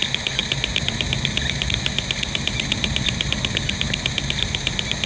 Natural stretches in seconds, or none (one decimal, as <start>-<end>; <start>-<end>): 0.0-5.1